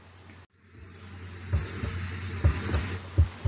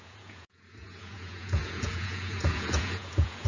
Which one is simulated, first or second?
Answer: second